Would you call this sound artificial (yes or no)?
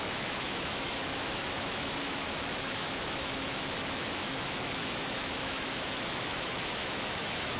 yes